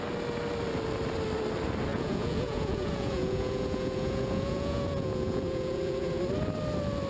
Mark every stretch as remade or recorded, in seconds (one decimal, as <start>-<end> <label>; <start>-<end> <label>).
0.0-1.9 recorded; 1.9-6.2 remade; 6.2-7.1 recorded